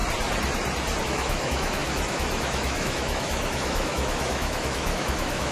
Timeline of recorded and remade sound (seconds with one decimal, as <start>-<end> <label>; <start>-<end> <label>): 0.0-1.0 recorded; 1.0-5.5 remade